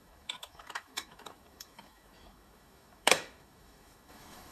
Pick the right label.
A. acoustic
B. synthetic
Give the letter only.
B